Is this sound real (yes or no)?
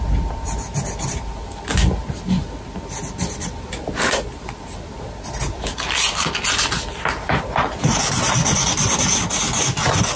yes